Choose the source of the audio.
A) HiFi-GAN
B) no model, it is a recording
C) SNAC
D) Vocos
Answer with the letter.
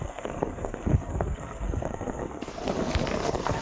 C